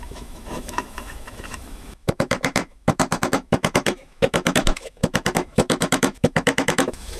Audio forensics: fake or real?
fake